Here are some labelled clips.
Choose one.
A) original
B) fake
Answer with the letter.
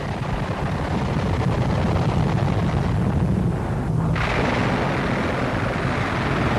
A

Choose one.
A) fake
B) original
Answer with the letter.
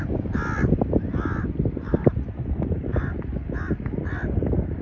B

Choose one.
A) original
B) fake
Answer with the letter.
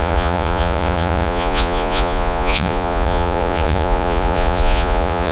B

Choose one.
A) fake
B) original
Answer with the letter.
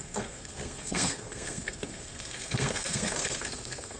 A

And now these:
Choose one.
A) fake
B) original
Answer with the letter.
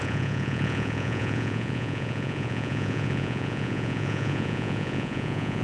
A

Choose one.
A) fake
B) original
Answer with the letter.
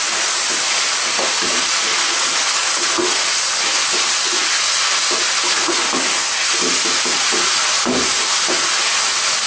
B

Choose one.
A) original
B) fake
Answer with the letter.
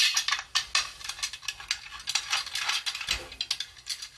A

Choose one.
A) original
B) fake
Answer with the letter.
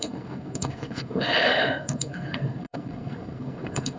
B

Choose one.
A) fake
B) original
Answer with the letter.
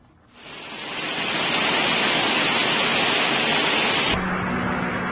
B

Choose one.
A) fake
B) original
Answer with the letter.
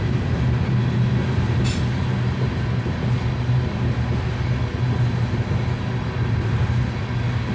B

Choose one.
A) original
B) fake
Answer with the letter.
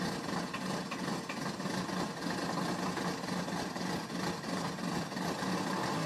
A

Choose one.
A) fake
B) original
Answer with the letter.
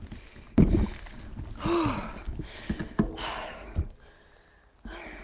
B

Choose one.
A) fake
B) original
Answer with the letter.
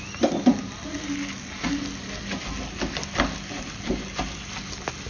B